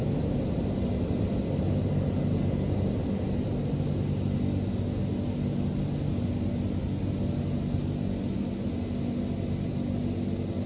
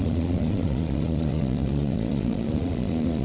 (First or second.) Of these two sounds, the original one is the first